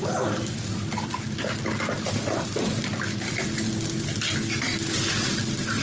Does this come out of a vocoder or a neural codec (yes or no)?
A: no